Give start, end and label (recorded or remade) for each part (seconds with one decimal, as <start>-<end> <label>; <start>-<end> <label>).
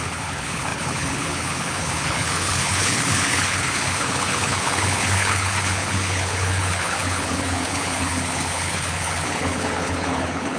0.0-10.6 remade